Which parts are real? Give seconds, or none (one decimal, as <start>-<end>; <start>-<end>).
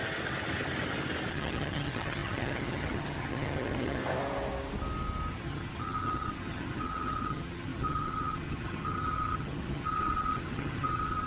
0.0-1.3; 4.0-5.3